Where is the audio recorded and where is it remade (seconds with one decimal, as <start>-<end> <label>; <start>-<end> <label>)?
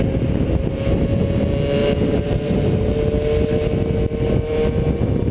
0.0-1.8 recorded; 1.8-3.0 remade; 3.0-5.3 recorded